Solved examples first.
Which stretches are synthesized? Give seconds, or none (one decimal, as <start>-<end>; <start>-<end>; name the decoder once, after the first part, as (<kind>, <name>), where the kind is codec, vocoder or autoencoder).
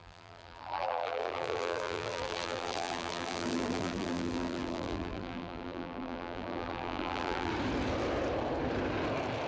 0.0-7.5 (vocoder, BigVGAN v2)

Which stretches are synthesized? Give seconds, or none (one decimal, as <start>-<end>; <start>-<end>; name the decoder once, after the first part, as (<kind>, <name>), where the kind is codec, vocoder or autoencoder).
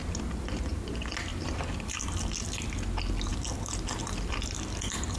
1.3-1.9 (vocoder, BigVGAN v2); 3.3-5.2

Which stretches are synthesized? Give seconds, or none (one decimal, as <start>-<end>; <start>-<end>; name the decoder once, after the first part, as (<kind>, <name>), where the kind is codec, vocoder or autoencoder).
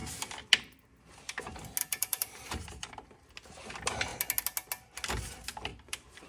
1.8-2.9 (vocoder, BigVGAN v2); 5.7-6.3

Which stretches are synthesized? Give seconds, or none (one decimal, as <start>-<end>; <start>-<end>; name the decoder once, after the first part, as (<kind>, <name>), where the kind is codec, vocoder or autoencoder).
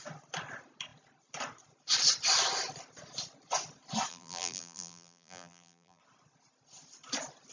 4.1-6.0 (vocoder, BigVGAN v2)